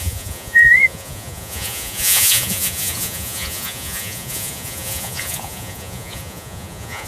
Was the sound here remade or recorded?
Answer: remade